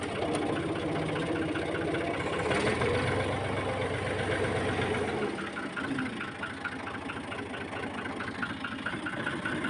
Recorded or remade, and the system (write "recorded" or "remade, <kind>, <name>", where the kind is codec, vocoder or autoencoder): recorded